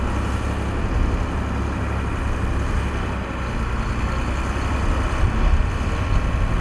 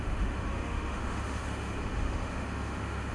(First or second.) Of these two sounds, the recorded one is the first